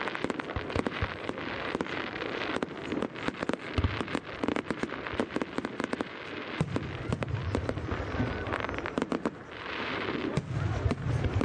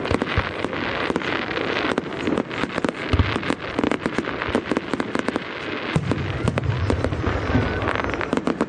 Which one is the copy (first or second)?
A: first